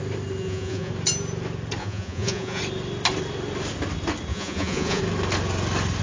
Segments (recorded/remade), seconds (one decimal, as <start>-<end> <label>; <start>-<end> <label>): 0.0-0.4 recorded; 0.4-0.9 remade; 0.9-1.8 recorded; 1.8-2.6 remade; 2.6-4.3 recorded; 4.3-5.0 remade; 5.0-6.0 recorded